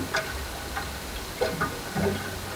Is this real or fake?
real